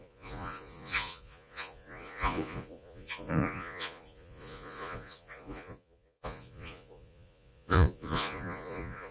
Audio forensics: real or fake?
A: fake